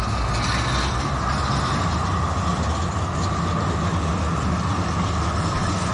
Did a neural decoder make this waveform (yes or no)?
no